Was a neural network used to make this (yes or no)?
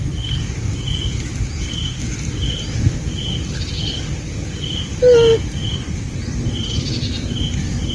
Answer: no